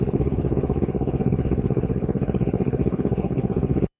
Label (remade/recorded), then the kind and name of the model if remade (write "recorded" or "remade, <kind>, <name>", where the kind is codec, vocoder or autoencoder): remade, codec, HILCodec